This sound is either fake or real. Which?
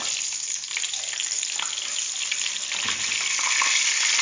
real